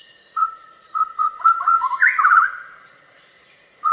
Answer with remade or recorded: remade